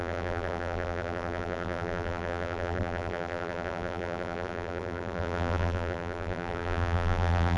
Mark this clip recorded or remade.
remade